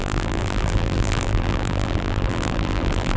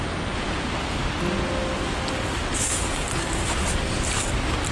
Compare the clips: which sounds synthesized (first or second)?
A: first